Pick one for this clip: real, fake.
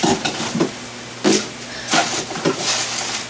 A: real